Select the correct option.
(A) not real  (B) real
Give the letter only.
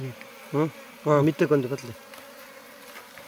B